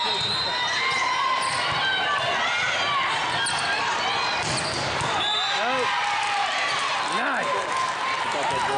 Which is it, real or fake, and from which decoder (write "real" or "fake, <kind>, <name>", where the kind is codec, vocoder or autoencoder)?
real